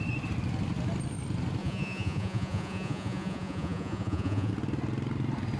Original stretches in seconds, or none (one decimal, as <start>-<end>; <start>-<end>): 0.0-1.6; 4.5-5.6